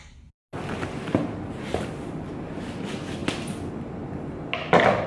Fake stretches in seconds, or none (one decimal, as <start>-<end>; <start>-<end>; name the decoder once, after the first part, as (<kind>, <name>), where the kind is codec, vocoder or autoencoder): 1.1-1.9 (vocoder, BigVGAN v2)